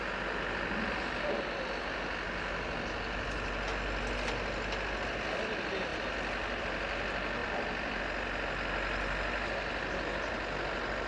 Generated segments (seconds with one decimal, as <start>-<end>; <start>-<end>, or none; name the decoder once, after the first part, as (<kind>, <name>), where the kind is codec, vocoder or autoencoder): 7.4-8.0 (vocoder, BigVGAN v2)